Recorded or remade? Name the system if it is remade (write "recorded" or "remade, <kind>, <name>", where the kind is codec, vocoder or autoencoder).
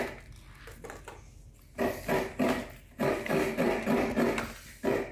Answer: recorded